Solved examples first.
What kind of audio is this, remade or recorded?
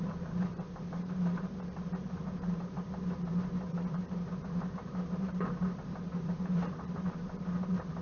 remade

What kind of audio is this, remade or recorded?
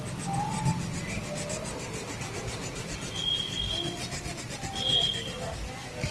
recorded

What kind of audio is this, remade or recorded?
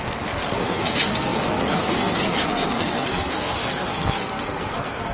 remade